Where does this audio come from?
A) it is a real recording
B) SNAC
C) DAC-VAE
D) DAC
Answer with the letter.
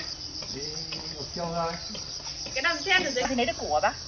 A